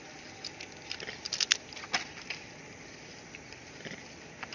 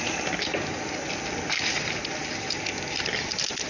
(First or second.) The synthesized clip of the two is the first